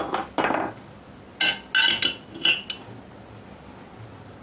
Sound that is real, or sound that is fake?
real